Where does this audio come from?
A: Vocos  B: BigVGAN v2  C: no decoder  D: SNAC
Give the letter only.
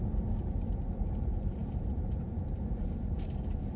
B